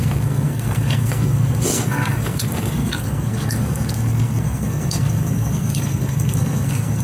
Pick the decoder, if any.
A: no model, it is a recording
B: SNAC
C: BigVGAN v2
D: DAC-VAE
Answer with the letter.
B